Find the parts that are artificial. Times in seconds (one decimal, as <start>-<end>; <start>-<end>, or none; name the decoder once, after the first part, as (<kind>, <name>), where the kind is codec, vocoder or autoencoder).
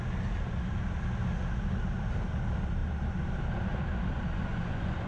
4.3-5.1 (vocoder, Vocos)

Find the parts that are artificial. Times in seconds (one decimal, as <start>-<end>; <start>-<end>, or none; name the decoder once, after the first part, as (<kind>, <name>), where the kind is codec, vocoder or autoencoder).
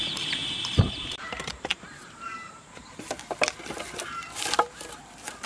0.0-5.5 (vocoder, BigVGAN v2)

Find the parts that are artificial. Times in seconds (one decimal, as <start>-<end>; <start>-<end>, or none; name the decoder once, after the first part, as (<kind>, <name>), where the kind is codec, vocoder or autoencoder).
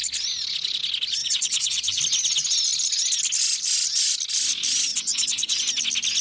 1.2-2.0 (vocoder, WaveNeXt); 4.9-5.6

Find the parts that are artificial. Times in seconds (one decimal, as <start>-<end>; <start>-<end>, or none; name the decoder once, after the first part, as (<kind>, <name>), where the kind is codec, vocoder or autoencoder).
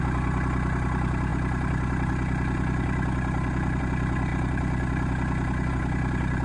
none